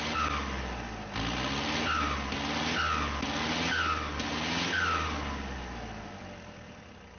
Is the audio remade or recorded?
recorded